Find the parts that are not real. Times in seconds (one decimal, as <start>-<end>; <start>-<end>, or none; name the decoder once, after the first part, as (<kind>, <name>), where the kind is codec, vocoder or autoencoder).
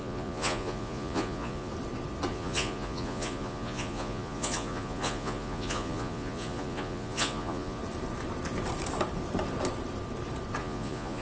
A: 0.0-1.7 (vocoder, Vocos); 2.3-7.8; 10.6-11.2